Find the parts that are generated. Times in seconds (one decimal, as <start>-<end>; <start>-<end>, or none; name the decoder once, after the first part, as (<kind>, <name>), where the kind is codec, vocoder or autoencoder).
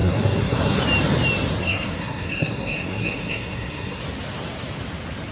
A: 0.0-0.8 (codec, SNAC); 1.6-4.0